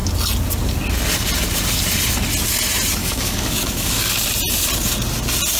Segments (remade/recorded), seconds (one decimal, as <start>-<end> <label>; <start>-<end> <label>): 0.0-3.0 recorded; 3.0-4.1 remade; 4.1-5.6 recorded